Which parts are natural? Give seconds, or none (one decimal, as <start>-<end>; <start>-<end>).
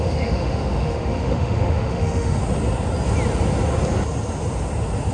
2.4-5.1